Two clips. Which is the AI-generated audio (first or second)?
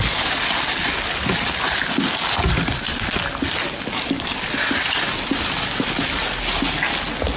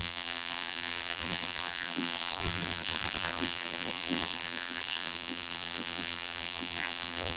second